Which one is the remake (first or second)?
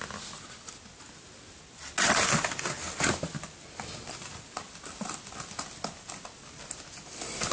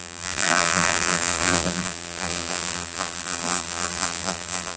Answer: second